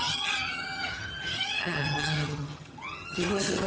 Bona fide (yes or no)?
no